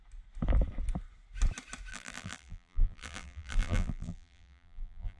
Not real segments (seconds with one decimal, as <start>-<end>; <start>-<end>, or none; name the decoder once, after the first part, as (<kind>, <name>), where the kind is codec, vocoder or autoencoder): 1.9-5.2 (vocoder, BigVGAN v2)